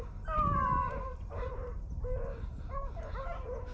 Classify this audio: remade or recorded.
recorded